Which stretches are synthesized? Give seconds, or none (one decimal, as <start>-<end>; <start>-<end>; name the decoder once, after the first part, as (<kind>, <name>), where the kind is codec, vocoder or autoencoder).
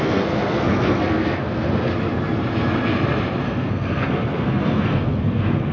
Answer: 0.0-1.9 (codec, SNAC); 3.4-5.7